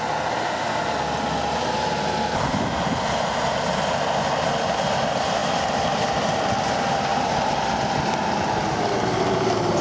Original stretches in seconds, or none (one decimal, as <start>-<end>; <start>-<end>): 0.0-9.8